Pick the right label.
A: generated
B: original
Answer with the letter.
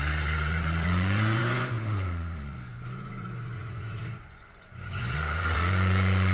A